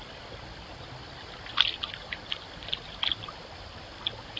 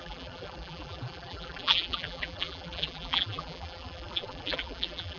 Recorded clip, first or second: first